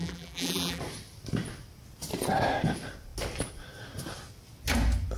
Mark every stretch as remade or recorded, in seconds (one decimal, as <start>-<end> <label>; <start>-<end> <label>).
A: 0.0-0.8 remade; 0.8-5.2 recorded